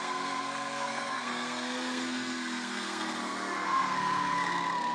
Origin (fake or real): fake